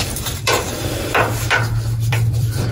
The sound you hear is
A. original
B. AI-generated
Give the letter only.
B